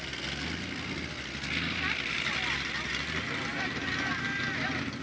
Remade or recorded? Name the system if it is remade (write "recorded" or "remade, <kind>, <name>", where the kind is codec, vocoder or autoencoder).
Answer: recorded